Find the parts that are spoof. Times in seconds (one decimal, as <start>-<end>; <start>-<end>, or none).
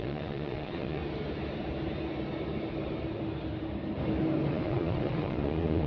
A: 0.0-1.0; 4.5-5.9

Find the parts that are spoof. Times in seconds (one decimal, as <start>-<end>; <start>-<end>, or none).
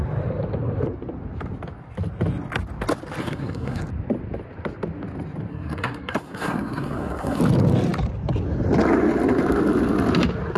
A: 3.2-3.8; 5.5-7.4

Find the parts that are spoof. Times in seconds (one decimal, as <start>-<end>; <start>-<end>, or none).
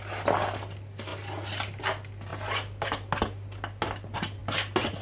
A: none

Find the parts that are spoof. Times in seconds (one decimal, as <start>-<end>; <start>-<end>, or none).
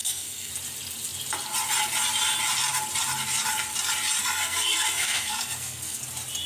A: 0.0-0.5; 4.2-6.0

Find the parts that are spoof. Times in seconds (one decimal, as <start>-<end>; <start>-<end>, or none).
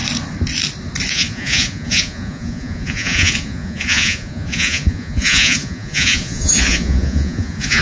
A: 1.1-7.8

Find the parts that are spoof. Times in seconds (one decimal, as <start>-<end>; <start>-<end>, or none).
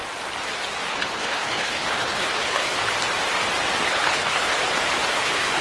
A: 0.9-2.8; 3.9-4.5; 5.1-5.6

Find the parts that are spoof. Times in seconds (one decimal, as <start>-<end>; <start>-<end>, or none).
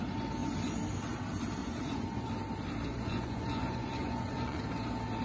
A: 1.6-2.3; 2.9-4.6